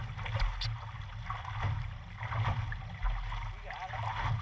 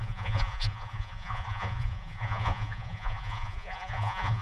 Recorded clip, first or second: first